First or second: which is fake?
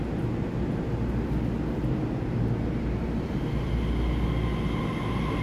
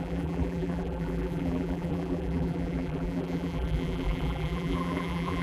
second